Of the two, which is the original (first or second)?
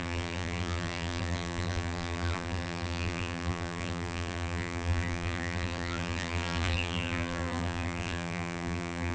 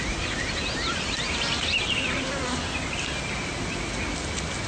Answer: second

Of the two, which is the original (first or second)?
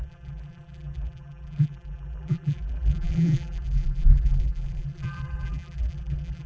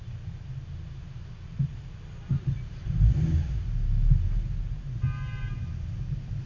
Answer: second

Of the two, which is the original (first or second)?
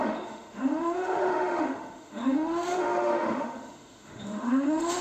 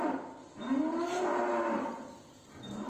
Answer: second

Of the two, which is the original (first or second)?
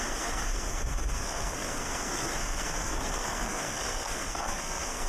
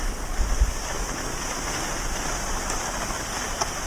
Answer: second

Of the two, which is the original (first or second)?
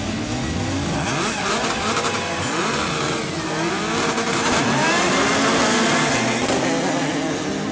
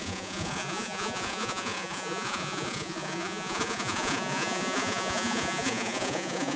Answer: first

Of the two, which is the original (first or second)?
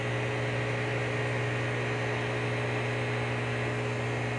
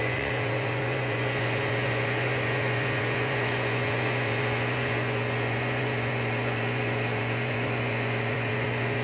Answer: first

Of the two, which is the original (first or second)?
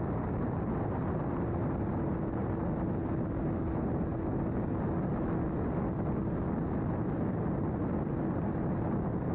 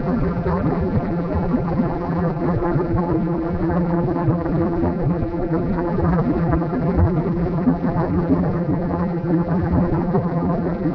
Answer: first